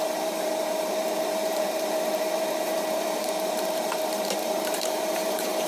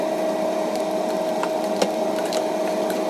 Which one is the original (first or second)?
second